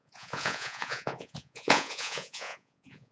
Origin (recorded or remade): remade